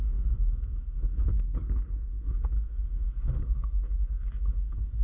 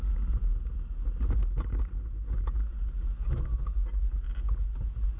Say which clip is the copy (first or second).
first